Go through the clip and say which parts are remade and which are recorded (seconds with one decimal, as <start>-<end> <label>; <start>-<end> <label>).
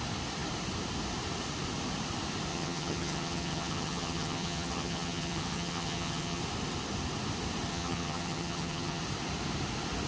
0.0-2.5 recorded; 2.5-6.4 remade; 6.4-7.7 recorded; 7.7-9.0 remade; 9.0-10.1 recorded